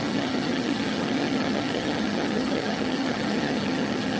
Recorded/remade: remade